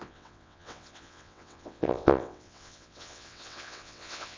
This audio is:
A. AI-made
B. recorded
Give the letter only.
A